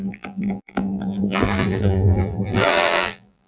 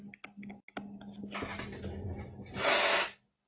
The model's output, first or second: first